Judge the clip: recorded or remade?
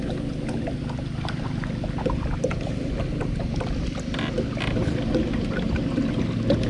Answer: recorded